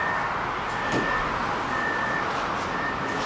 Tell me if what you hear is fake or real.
real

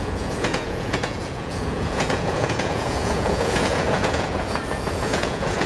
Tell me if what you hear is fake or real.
fake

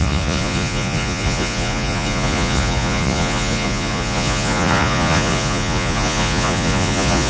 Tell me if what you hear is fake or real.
fake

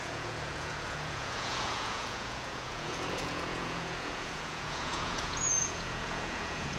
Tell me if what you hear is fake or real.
fake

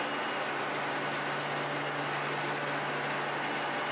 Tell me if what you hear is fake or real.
real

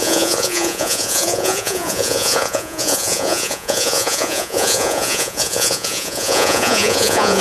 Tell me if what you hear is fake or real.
fake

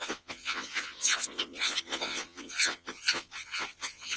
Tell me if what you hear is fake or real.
fake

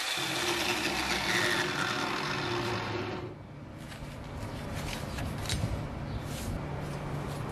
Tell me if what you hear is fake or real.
real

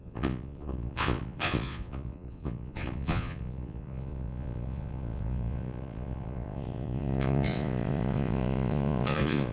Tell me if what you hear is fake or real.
fake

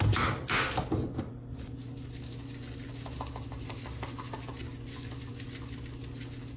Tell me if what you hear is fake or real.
real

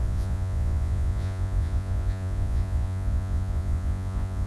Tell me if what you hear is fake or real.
fake